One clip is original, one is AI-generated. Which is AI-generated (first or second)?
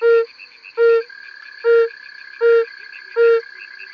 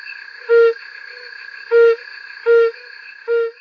second